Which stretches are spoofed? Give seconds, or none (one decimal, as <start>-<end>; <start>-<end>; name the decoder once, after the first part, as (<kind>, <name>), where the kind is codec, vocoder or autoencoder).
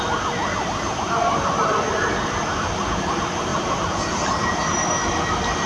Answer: none